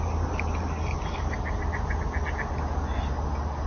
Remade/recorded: recorded